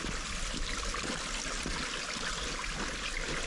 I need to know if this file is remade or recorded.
recorded